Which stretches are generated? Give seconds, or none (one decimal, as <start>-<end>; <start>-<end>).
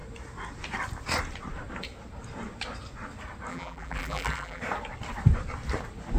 3.5-4.6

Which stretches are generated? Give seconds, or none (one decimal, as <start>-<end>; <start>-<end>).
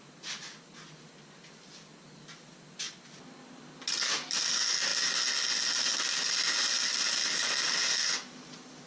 none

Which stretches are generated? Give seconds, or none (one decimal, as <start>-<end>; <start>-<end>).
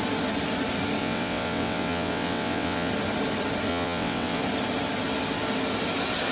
1.0-2.9; 3.7-4.4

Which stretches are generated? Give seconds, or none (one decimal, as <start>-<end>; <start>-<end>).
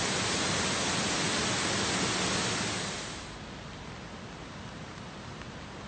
4.4-5.3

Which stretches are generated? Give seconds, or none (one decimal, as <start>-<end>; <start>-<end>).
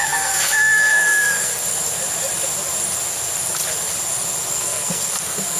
0.0-1.5; 4.5-5.6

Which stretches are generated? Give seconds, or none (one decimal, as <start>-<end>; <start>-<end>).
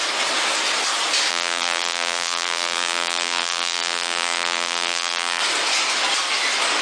1.3-5.4